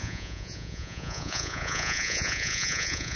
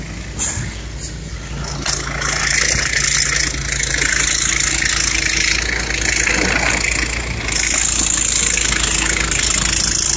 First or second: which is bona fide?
second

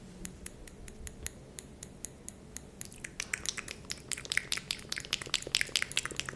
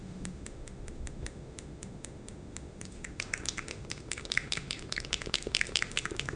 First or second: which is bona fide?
first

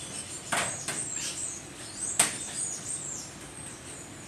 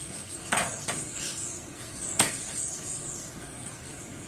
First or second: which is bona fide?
first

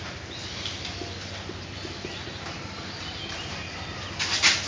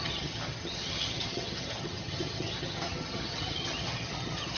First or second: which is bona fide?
first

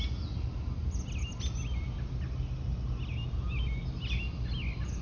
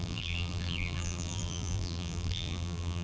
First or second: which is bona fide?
first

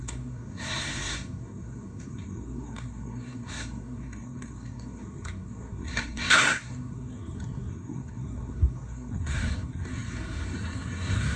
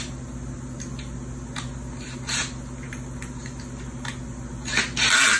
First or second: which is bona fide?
second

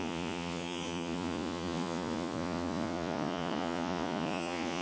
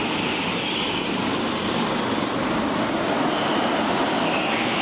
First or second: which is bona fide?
second